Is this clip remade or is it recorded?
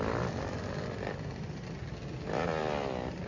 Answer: recorded